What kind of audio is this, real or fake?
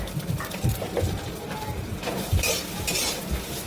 fake